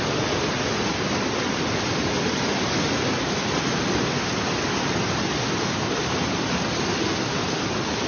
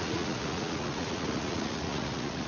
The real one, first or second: first